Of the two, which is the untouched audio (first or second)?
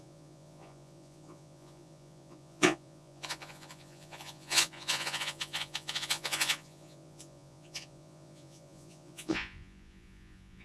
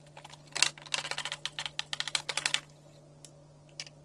second